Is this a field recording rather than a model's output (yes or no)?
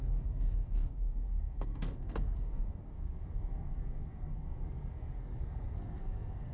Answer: no